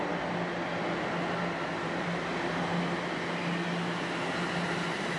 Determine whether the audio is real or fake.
real